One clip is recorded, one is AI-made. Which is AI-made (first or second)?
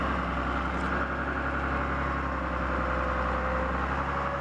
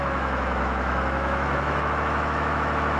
second